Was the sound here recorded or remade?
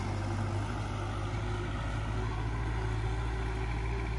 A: recorded